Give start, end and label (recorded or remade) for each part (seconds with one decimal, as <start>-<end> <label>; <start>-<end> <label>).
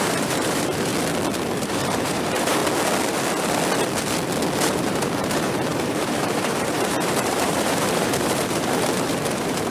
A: 0.0-0.9 remade; 0.9-1.6 recorded; 1.6-2.6 remade; 2.6-4.6 recorded; 4.6-9.7 remade